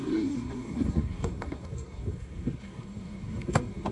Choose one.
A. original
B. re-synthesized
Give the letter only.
B